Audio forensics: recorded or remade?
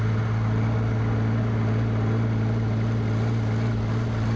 recorded